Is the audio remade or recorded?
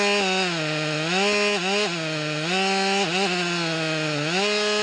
recorded